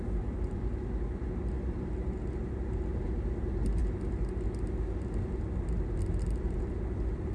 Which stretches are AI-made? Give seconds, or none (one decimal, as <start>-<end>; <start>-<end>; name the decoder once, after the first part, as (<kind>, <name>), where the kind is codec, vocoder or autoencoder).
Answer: none